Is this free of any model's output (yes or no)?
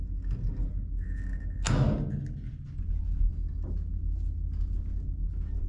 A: yes